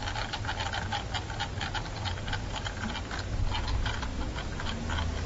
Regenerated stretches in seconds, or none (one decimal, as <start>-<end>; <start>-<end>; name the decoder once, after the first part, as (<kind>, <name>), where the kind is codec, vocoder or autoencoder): none